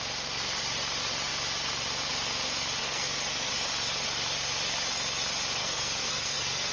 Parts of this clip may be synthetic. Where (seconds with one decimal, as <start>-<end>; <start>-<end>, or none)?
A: 2.8-3.5; 5.6-6.7